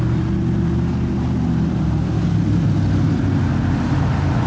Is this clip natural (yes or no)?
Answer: yes